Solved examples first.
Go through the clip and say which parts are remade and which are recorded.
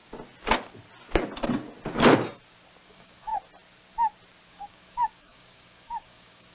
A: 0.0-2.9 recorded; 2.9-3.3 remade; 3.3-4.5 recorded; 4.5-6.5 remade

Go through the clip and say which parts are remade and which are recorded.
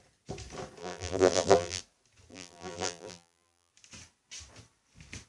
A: 0.0-0.8 recorded; 0.8-1.8 remade; 1.8-2.3 recorded; 2.3-3.7 remade; 3.7-5.3 recorded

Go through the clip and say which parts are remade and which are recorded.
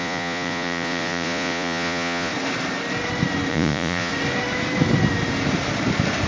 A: 0.0-2.3 remade; 2.3-3.5 recorded; 3.5-4.1 remade; 4.1-6.3 recorded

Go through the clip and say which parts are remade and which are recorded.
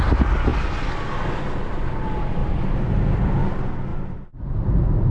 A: 0.0-2.4 recorded; 2.4-3.3 remade; 3.3-5.1 recorded